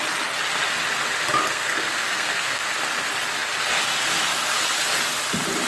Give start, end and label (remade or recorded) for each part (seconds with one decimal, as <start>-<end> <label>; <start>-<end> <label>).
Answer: 0.0-1.4 recorded; 1.4-2.6 remade; 2.6-5.7 recorded